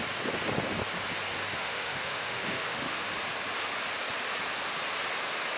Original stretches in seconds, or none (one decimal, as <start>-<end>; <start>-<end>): 0.0-1.5; 3.0-5.6